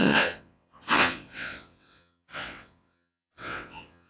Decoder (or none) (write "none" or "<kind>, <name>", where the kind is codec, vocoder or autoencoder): vocoder, WaveNeXt